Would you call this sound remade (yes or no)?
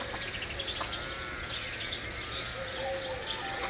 no